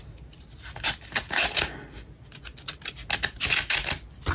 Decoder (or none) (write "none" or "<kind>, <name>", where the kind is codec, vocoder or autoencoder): none